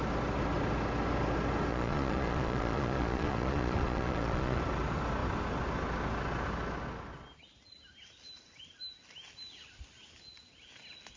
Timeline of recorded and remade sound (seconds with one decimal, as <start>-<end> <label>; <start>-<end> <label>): 0.0-1.7 recorded; 1.7-4.6 remade; 4.6-11.2 recorded